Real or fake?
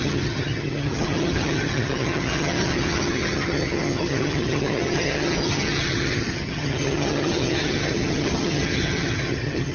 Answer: fake